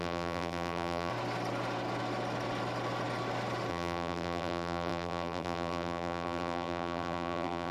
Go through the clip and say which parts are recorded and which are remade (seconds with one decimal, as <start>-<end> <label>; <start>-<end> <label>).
0.0-1.1 remade; 1.1-3.7 recorded; 3.7-7.7 remade